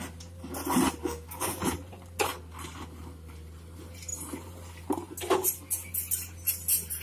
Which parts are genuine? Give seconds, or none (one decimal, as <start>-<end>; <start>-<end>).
0.0-1.0; 1.6-7.0